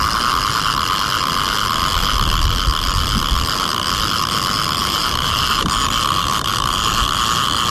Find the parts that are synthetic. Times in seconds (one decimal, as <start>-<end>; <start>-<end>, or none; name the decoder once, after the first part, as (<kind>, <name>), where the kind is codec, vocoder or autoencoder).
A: 4.8-5.6 (vocoder, BigVGAN v2)